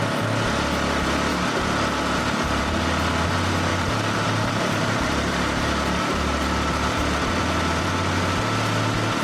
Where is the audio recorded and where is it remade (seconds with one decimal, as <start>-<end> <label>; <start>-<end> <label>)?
0.0-1.3 recorded; 1.3-2.6 remade; 2.6-3.7 recorded; 3.7-7.4 remade; 7.4-9.2 recorded